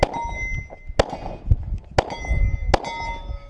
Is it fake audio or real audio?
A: real